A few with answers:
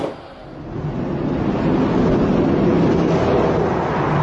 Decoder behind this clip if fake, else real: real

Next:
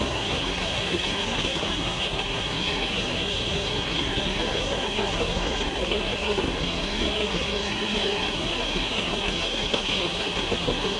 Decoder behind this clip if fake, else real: fake, codec, SNAC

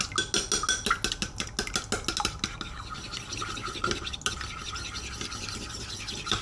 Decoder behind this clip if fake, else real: real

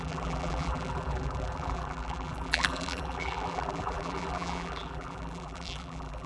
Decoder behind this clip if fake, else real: fake, vocoder, BigVGAN v2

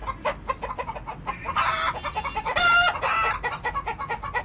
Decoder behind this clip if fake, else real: real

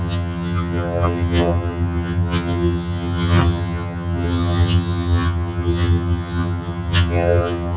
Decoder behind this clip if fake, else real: fake, vocoder, HiFi-GAN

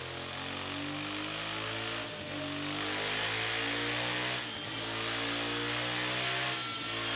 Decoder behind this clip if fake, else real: real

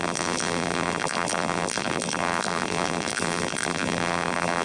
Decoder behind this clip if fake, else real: fake, vocoder, BigVGAN v2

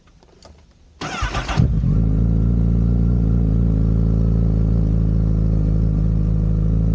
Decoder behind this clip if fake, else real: real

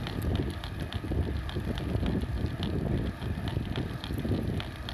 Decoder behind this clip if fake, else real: real